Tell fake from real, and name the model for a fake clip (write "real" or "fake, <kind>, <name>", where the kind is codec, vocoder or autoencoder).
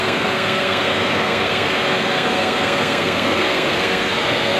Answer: fake, codec, SNAC